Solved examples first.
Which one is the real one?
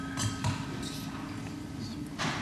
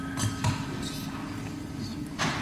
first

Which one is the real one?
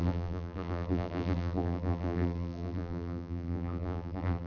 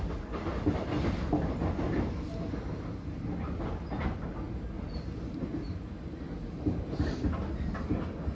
second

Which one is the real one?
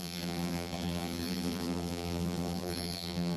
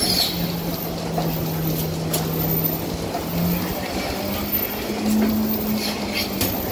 second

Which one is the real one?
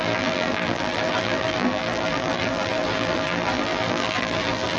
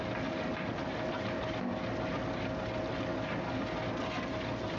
second